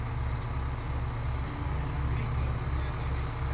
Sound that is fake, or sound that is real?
real